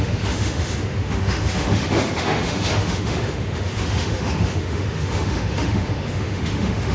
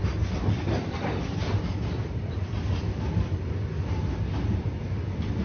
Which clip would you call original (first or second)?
second